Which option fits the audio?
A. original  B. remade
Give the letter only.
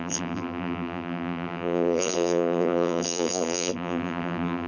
B